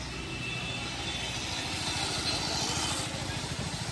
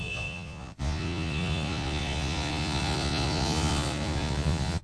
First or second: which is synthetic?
second